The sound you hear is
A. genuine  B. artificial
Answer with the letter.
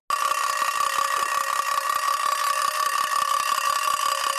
A